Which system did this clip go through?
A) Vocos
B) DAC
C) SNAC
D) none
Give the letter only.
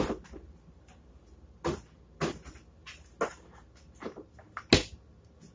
D